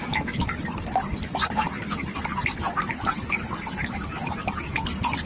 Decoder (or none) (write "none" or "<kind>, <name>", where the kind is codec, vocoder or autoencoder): none